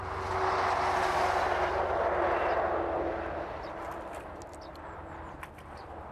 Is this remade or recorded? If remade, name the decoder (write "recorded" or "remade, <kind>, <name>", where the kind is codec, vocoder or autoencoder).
recorded